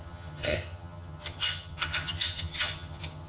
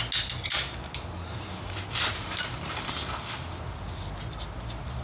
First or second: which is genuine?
second